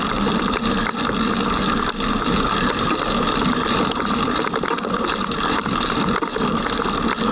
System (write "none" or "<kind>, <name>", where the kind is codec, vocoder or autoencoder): none